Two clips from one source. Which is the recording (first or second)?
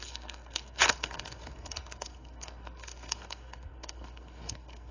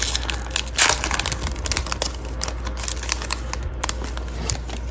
second